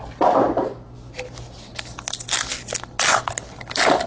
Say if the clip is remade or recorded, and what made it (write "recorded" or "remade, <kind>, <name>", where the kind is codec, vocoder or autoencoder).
recorded